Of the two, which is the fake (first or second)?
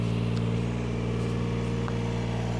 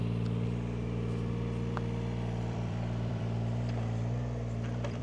second